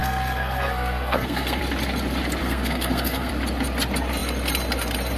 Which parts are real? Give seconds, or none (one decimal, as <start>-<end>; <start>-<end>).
1.6-2.4; 3.3-5.2